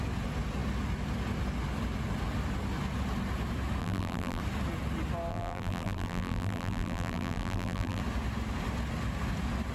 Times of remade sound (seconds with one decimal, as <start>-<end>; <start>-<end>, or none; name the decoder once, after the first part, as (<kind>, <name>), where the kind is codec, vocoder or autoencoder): 3.8-4.4 (vocoder, BigVGAN v2); 5.3-8.0